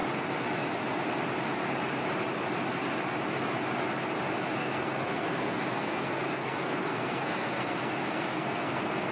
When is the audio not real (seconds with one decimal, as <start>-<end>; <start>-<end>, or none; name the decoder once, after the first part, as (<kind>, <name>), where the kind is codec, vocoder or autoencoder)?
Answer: 4.6-9.1 (codec, SNAC)